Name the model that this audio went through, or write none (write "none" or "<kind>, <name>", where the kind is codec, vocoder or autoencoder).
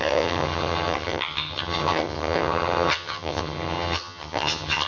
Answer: vocoder, HiFi-GAN